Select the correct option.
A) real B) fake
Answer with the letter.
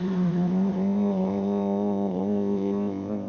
B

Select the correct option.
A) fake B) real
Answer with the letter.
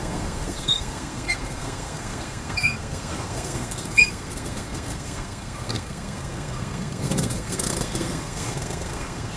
A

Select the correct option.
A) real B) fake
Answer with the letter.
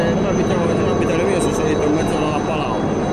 A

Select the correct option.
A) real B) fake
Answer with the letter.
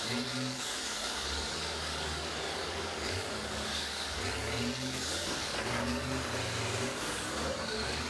B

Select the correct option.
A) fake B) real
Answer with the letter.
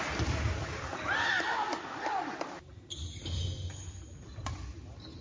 B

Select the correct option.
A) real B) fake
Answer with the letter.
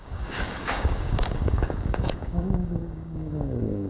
B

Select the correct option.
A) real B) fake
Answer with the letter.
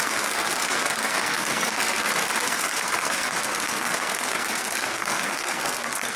B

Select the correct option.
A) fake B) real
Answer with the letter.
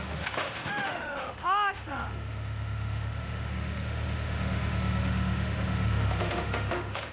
A